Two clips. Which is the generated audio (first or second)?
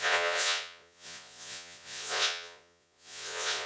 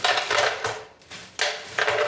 first